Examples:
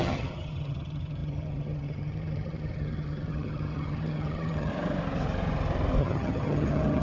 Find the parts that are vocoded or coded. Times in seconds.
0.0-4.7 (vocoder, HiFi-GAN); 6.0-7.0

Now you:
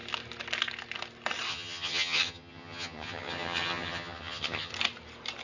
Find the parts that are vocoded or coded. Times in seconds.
1.5-4.7 (vocoder, HiFi-GAN)

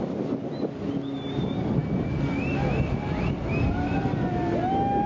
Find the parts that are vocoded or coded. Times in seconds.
none